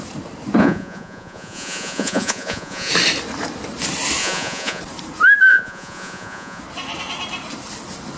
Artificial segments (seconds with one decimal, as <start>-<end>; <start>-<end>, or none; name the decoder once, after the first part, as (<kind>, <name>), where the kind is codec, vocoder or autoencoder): 0.6-2.9 (vocoder, Vocos); 4.2-4.8; 5.5-6.6

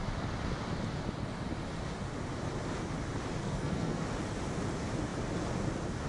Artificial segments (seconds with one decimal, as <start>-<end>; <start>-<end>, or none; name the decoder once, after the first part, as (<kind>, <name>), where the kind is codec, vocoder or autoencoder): 3.4-4.0 (codec, SNAC)

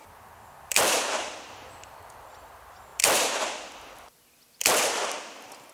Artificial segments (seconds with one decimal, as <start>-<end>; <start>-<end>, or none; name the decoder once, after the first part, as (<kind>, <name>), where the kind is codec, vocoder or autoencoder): none

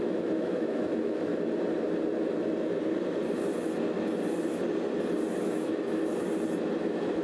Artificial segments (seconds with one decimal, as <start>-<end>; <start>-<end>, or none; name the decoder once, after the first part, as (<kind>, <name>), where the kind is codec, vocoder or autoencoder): 0.0-1.3 (autoencoder, DAC-VAE); 5.4-6.0; 6.8-7.2

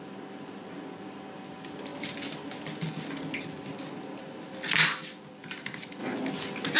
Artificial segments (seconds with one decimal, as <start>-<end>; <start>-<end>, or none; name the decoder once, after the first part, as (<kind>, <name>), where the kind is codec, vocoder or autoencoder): none

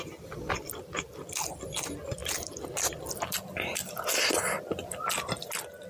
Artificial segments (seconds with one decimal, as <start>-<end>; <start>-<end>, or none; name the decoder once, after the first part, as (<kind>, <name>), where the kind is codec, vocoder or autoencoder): none

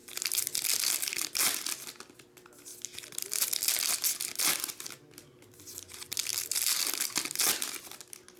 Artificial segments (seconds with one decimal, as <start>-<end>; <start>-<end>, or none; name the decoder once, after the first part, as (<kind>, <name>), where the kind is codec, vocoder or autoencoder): 6.3-6.8 (vocoder, BigVGAN v2)